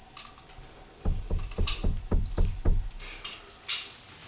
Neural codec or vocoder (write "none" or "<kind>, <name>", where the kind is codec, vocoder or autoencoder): none